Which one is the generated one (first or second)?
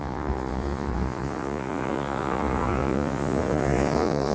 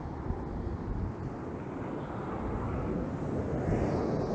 first